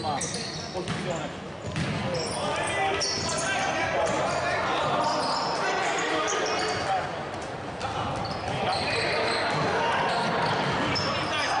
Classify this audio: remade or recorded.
recorded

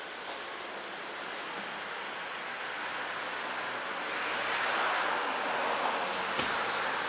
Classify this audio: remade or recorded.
recorded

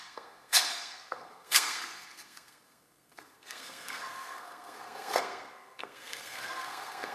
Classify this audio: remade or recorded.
remade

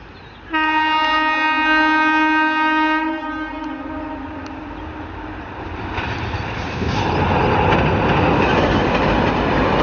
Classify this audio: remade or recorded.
recorded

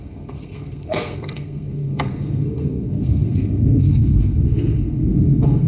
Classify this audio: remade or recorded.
remade